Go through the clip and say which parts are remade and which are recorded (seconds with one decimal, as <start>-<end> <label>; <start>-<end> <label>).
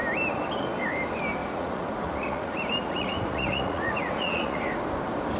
0.0-1.4 recorded; 1.4-4.6 remade; 4.6-5.4 recorded